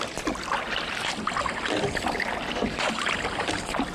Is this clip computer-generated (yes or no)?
no